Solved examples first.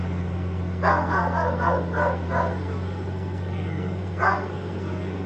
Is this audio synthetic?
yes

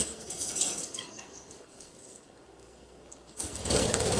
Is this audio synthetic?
yes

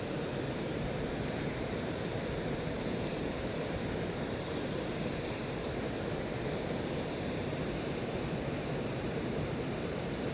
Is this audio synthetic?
yes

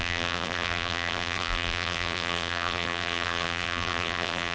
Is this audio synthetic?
yes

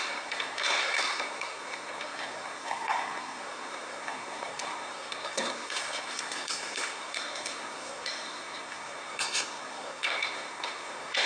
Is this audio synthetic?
yes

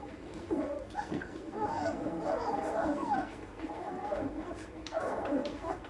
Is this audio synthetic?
yes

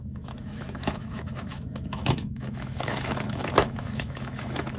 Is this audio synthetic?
yes